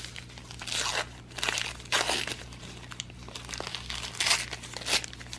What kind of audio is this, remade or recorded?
recorded